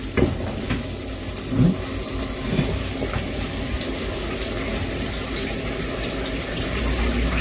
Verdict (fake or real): real